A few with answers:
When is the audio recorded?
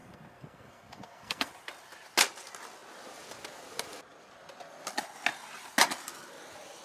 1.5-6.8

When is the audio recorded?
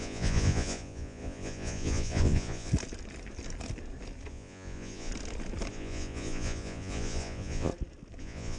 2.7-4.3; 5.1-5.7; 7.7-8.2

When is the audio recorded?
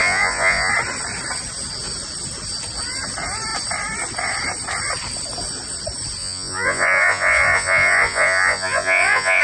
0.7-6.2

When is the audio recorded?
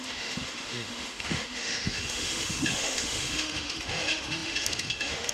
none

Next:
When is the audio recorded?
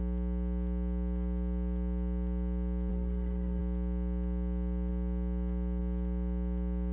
0.0-2.9; 3.6-6.9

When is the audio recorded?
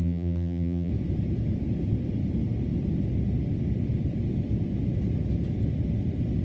0.9-6.4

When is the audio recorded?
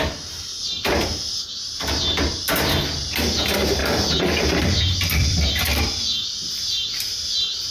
0.0-7.7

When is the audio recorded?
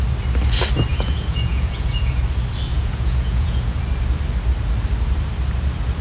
0.0-0.9; 2.2-2.7; 3.8-6.0